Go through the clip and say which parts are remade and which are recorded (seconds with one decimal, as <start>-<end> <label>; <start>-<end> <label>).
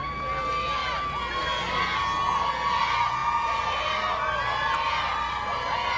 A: 0.0-6.0 recorded